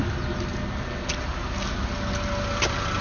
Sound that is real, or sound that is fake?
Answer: real